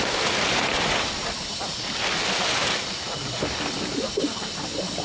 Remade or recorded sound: recorded